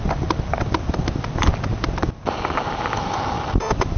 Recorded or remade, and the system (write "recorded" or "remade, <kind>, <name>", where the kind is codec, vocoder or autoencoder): recorded